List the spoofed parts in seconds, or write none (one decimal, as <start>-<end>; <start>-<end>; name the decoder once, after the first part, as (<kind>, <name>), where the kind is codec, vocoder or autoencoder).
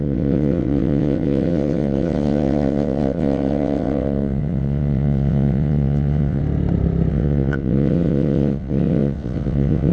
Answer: 0.0-6.4 (vocoder, WaveNeXt); 7.1-9.9